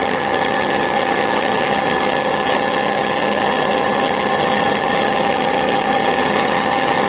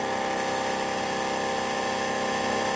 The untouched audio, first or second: second